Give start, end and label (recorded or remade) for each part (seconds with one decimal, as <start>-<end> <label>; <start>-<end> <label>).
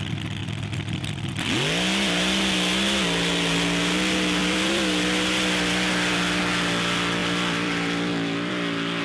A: 0.0-0.4 recorded; 0.4-1.3 remade; 1.3-4.4 recorded; 4.4-6.4 remade; 6.4-7.2 recorded; 7.2-8.5 remade; 8.5-9.0 recorded